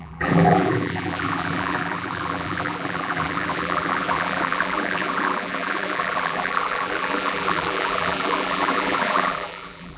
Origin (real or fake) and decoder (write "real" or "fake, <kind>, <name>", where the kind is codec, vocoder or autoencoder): fake, vocoder, BigVGAN v2